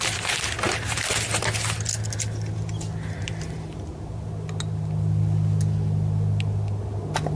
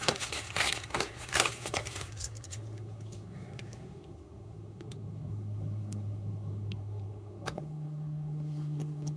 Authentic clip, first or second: first